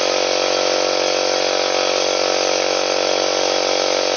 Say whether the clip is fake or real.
real